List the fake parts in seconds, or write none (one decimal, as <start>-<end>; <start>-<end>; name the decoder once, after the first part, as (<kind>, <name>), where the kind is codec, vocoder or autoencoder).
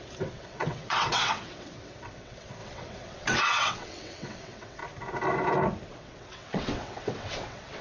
0.0-4.8 (vocoder, WaveNeXt); 5.9-7.8